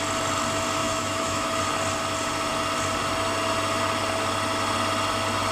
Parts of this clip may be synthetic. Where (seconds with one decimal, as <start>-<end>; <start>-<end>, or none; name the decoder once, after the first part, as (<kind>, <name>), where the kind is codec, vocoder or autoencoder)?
0.8-1.6 (autoencoder, DAC-VAE)